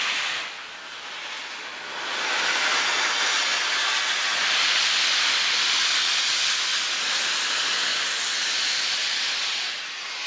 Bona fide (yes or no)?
yes